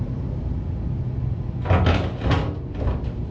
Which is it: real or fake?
real